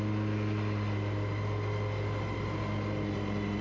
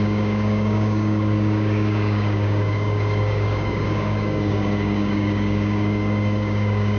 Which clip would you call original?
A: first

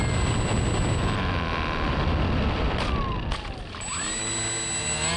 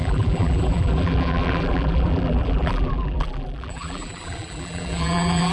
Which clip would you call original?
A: first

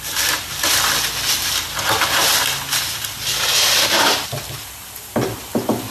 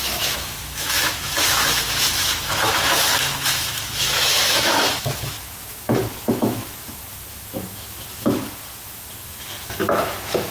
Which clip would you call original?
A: first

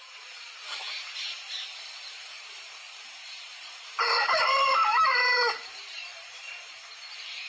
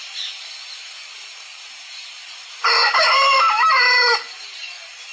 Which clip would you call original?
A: second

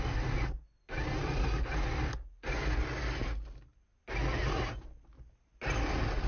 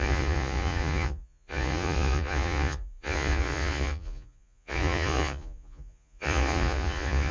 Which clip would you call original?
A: first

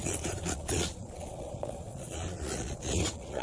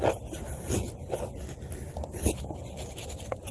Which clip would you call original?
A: second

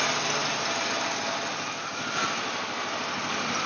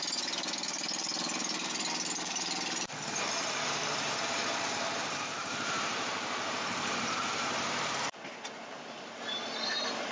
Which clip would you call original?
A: first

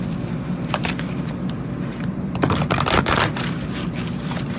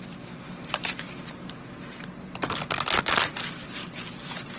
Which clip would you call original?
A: second